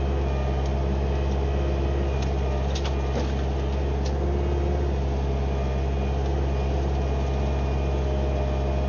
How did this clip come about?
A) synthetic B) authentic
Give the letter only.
B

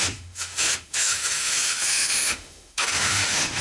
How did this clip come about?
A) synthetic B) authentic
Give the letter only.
A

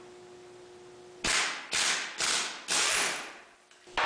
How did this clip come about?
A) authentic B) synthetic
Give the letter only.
A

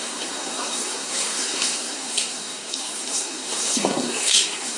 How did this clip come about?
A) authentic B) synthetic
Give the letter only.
B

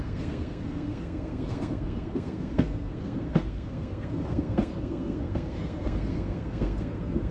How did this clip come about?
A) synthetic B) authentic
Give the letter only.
A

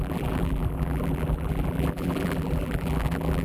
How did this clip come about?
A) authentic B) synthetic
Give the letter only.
B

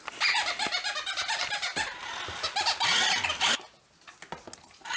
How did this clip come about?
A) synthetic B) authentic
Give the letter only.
B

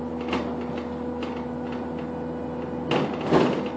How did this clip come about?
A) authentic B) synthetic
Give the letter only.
A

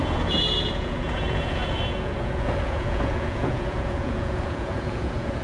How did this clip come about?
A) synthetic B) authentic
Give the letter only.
A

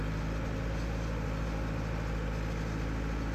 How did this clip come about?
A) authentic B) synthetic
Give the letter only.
A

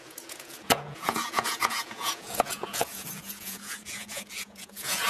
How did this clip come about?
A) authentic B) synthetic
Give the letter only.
B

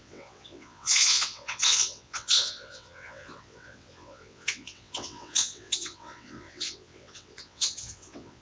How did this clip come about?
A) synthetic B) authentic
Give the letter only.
A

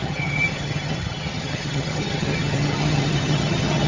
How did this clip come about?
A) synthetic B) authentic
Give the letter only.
A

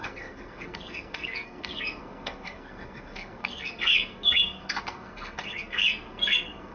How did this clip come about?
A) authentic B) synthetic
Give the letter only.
B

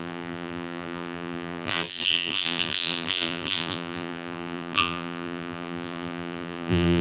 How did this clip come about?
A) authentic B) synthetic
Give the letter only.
B